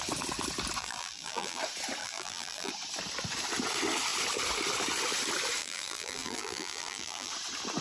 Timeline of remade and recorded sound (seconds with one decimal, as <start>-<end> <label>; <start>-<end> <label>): 0.0-0.8 recorded; 0.8-1.6 remade; 1.6-2.0 recorded; 2.0-2.7 remade; 2.7-5.6 recorded; 5.6-7.3 remade; 7.3-7.8 recorded